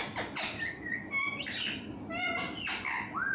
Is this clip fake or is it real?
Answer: real